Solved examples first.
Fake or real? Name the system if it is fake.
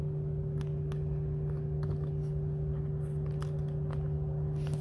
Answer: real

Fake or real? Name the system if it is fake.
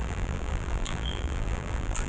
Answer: fake, vocoder, BigVGAN v2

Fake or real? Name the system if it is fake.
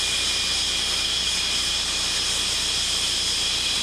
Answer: real